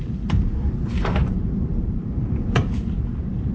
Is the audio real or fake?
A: fake